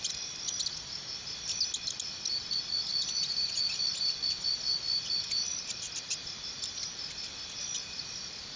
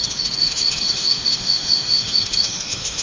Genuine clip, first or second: first